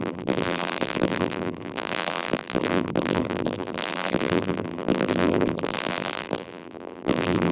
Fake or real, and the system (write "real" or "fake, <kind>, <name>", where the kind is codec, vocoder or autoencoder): fake, vocoder, BigVGAN v2